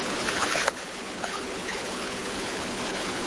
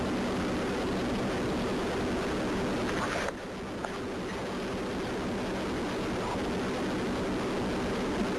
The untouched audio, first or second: second